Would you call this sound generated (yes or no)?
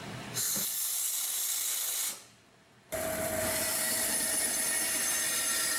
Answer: yes